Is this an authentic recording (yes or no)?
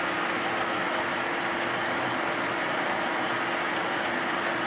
yes